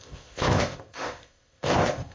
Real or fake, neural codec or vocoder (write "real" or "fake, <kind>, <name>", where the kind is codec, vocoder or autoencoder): fake, codec, ZipCodec